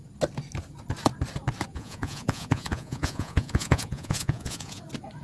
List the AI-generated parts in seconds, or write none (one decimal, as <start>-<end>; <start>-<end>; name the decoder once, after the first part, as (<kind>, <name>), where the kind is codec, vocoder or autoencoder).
1.7-4.8 (vocoder, Vocos)